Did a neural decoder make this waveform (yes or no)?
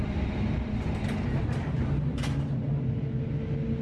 no